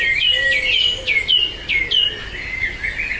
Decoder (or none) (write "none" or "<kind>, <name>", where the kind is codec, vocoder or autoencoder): none